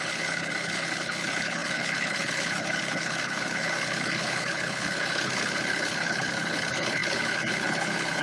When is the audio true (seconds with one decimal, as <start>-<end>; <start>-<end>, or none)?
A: none